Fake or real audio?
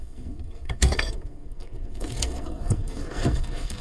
fake